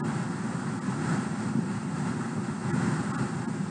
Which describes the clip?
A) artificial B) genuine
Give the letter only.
B